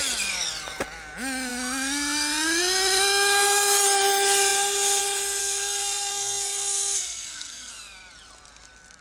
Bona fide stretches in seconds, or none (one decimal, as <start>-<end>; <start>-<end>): 0.0-5.4; 7.7-9.0